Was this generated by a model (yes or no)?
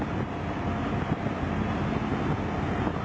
no